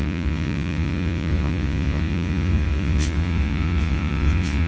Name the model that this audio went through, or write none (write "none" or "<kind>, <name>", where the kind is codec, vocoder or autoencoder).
vocoder, Vocos